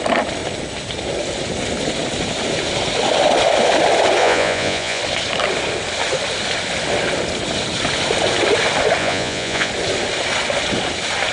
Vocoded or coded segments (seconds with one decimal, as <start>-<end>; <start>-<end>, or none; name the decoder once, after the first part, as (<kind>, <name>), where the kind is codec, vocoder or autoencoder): 4.2-5.0 (vocoder, Vocos); 9.0-9.7

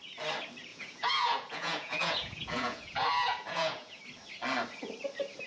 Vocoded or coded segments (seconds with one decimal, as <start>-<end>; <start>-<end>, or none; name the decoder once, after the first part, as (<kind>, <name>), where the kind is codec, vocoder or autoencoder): 0.7-4.0 (vocoder, Vocos)

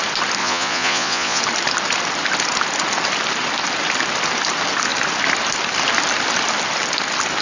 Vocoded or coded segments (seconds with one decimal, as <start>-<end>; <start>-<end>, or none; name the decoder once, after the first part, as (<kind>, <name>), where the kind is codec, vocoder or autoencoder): 0.4-1.4 (vocoder, Vocos)

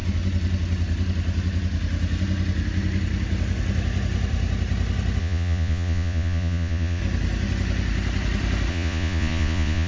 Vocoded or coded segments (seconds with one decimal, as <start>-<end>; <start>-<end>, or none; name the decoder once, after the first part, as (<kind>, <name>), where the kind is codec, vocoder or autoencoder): 5.2-7.0 (vocoder, Vocos); 8.7-9.9

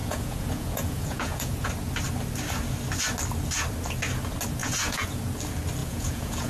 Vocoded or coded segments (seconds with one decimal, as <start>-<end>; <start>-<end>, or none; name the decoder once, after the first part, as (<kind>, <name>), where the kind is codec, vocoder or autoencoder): 0.0-1.7 (vocoder, Vocos); 4.6-5.2; 5.8-6.5

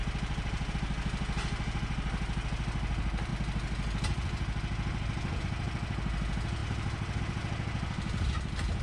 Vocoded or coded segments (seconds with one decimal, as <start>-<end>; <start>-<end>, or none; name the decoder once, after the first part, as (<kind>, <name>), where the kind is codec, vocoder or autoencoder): none